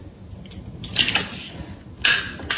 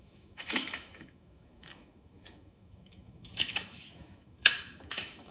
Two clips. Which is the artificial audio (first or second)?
second